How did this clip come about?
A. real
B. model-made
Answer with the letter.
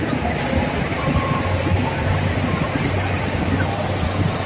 A